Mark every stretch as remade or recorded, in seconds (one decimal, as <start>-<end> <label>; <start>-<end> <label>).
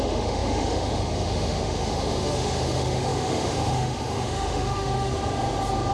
0.0-5.1 remade; 5.1-5.9 recorded